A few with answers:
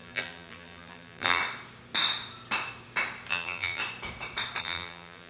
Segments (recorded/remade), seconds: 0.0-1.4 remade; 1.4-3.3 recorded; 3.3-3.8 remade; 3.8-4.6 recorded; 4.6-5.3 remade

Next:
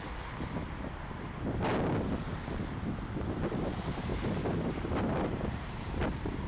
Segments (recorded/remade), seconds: 0.0-4.1 recorded; 4.1-6.5 remade

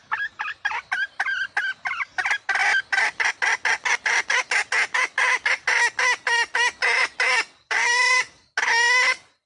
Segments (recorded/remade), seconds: 0.0-2.6 recorded; 2.6-3.3 remade; 3.3-7.0 recorded; 7.0-8.2 remade; 8.2-9.5 recorded

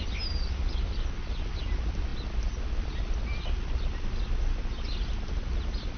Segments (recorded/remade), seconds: 0.0-6.0 recorded